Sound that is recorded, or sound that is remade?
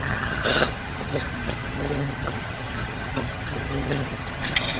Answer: remade